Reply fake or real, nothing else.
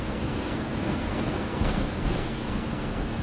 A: fake